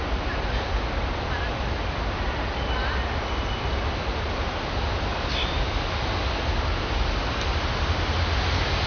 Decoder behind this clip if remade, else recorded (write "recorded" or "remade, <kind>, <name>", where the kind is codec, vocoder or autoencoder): recorded